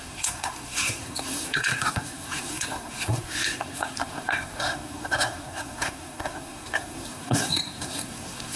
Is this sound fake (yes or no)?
yes